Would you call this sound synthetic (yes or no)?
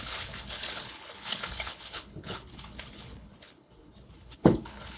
yes